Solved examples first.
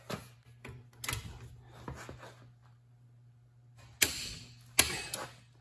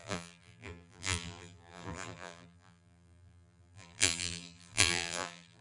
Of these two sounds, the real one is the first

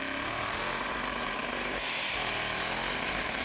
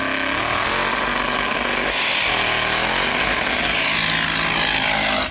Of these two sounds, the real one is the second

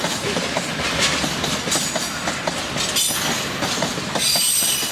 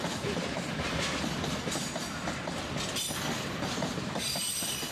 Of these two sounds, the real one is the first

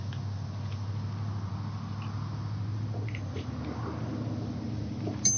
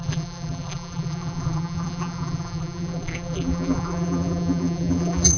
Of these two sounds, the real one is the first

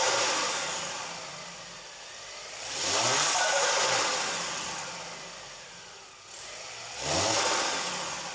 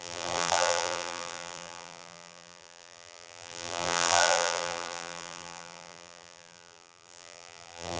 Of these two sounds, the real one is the first